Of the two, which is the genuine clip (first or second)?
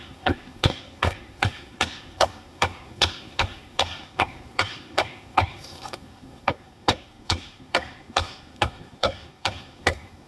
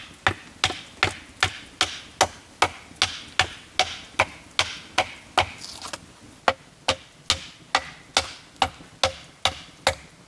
second